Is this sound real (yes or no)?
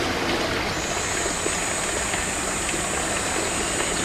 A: yes